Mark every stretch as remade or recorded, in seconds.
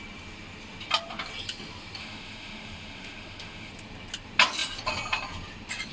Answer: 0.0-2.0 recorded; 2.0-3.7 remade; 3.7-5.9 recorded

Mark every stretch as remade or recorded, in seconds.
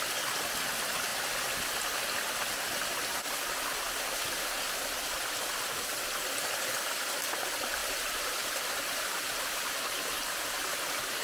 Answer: 0.0-7.8 recorded; 7.8-10.1 remade; 10.1-11.2 recorded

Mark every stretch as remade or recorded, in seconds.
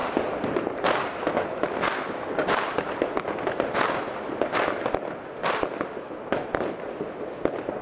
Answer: 0.0-2.4 recorded; 2.4-4.6 remade; 4.6-7.8 recorded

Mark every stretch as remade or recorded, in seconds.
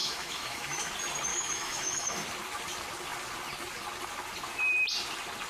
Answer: 0.0-0.9 remade; 0.9-1.3 recorded; 1.3-2.2 remade; 2.2-5.5 recorded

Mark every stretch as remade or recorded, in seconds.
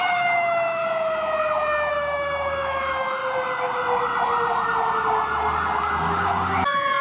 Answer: 0.0-0.8 remade; 0.8-1.9 recorded; 1.9-3.2 remade; 3.2-7.0 recorded